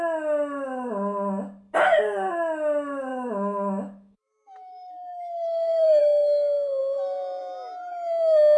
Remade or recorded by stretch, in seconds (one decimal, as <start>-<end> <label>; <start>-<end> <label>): 0.0-3.1 recorded; 3.1-6.0 remade; 6.0-8.6 recorded